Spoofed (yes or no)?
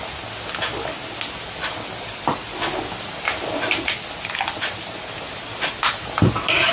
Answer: no